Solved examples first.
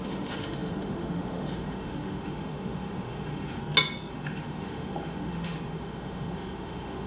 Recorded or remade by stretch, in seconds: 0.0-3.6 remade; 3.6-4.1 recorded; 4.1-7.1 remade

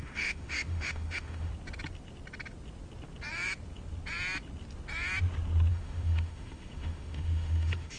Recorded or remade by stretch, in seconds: 0.0-1.5 remade; 1.5-5.7 recorded; 5.7-8.0 remade